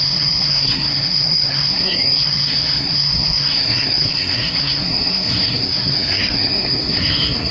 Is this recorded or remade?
remade